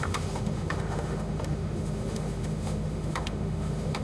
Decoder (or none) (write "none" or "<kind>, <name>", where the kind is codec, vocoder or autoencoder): autoencoder, DAC-VAE